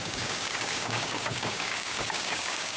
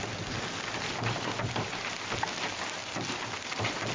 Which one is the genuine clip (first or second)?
second